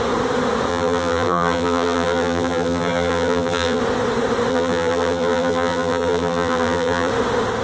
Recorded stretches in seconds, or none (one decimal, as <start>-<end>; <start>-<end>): 0.0-0.7; 3.8-4.5; 7.1-7.6

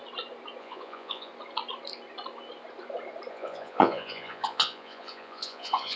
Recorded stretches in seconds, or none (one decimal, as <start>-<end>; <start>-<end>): 0.0-0.6; 1.3-3.3

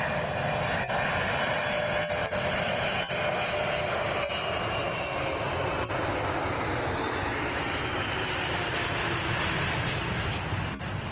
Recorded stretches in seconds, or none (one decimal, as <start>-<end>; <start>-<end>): 0.0-2.2; 2.9-7.3; 7.9-11.1

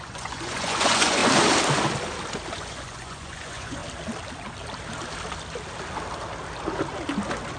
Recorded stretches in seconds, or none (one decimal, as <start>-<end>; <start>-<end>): 1.2-2.5; 3.8-7.6

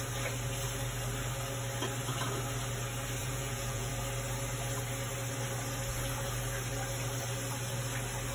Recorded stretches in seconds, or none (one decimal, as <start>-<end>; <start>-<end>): 0.0-3.2; 3.9-8.3